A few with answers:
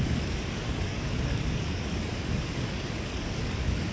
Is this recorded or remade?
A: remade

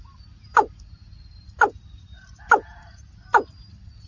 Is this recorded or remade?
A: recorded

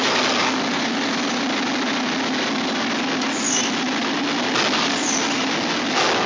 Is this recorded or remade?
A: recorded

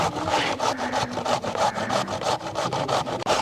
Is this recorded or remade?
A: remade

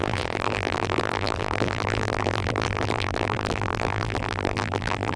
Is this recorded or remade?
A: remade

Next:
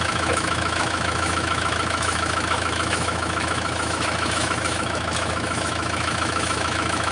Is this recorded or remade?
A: remade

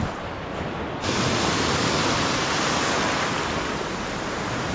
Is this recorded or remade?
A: recorded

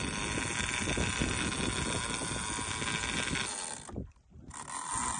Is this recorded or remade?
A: recorded